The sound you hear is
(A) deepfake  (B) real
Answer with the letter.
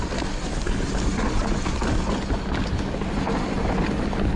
B